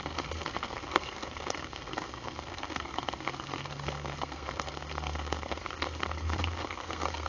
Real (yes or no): no